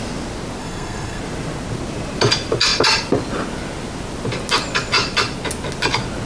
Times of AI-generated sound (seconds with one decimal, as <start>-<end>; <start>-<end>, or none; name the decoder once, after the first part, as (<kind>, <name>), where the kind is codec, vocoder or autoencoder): 0.6-1.2 (codec, SNAC)